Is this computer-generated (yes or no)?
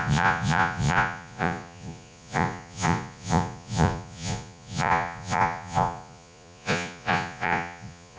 yes